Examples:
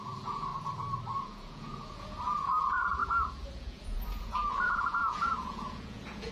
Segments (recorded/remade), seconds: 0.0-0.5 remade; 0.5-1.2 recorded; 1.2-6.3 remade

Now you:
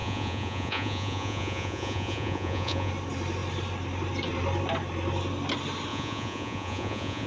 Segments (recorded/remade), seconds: 0.0-2.9 remade; 2.9-5.9 recorded; 5.9-7.3 remade

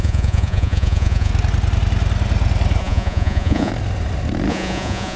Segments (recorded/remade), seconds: 0.0-1.3 remade; 1.3-2.8 recorded; 2.8-3.7 remade; 3.7-4.5 recorded; 4.5-5.2 remade

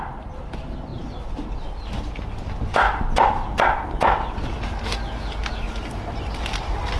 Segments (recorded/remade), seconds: 0.0-7.0 recorded

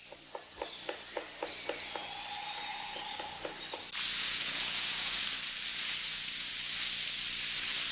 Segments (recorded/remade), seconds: 0.0-4.2 recorded; 4.2-5.2 remade; 5.2-5.7 recorded; 5.7-6.5 remade; 6.5-7.9 recorded

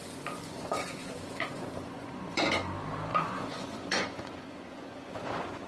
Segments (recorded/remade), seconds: 0.0-2.5 remade; 2.5-3.1 recorded; 3.1-5.7 remade

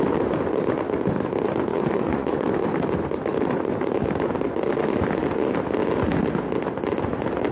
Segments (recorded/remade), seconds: 0.0-1.7 recorded; 1.7-2.5 remade; 2.5-7.5 recorded

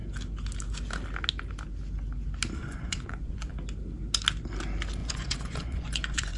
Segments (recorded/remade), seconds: 0.0-2.6 recorded; 2.6-3.5 remade; 3.5-5.0 recorded; 5.0-6.4 remade